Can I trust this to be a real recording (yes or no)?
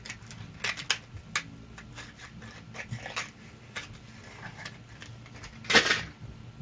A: yes